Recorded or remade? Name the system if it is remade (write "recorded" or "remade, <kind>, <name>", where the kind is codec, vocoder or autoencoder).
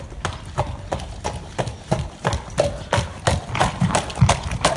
recorded